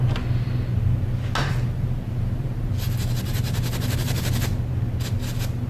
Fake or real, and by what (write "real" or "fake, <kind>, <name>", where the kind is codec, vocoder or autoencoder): real